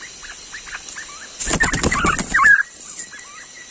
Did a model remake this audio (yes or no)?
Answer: no